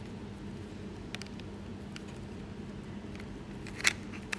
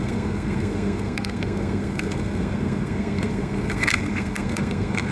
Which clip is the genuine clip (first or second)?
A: first